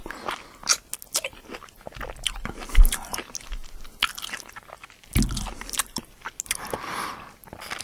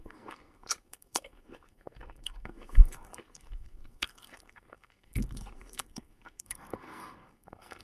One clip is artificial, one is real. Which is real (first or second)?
first